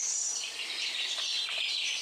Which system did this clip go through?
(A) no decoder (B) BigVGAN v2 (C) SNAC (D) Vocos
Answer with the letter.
A